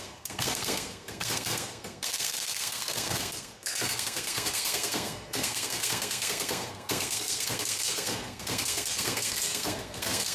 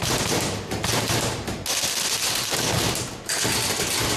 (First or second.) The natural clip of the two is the second